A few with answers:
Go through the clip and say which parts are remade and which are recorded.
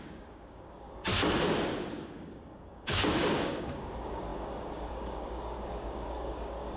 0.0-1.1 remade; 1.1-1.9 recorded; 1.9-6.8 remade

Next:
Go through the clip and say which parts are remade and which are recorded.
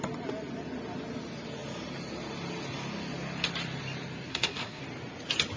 0.0-4.3 recorded; 4.3-4.8 remade; 4.8-5.6 recorded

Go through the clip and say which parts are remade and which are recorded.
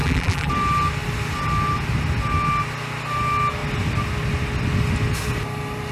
0.0-0.5 remade; 0.5-5.9 recorded